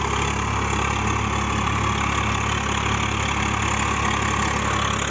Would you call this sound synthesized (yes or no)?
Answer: no